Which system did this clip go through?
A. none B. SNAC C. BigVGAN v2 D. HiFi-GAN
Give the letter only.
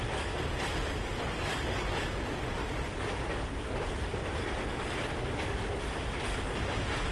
A